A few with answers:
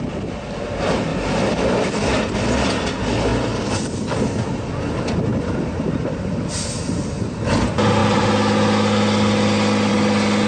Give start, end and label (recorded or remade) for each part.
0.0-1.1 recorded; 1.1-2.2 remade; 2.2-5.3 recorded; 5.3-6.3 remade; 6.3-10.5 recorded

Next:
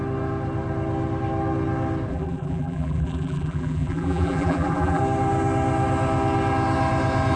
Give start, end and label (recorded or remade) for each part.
0.0-2.1 recorded; 2.1-5.0 remade; 5.0-7.4 recorded

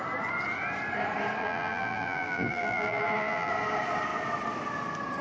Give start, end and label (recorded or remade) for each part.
0.0-1.4 recorded; 1.4-3.5 remade; 3.5-5.2 recorded

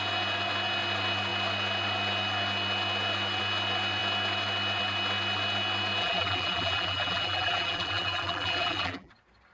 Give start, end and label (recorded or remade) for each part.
0.0-6.0 recorded; 6.0-9.1 remade; 9.1-9.5 recorded

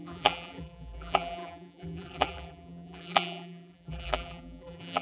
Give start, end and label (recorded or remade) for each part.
0.0-5.0 remade